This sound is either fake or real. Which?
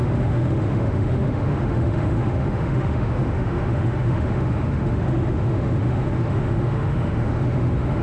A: fake